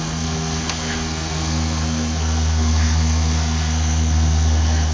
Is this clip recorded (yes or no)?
no